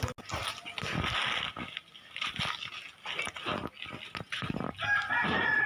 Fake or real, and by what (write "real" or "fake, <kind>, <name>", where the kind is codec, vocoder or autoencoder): real